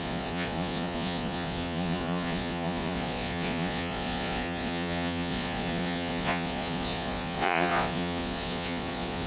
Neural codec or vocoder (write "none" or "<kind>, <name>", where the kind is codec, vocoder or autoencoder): vocoder, Vocos